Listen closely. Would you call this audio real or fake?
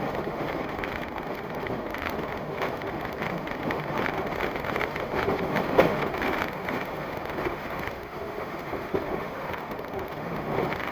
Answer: fake